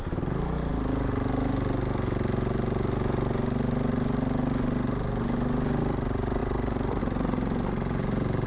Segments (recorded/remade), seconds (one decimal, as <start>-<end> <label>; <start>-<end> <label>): 0.0-6.4 recorded; 6.4-7.0 remade; 7.0-8.5 recorded